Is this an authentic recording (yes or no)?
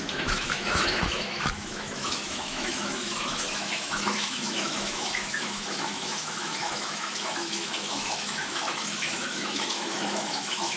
no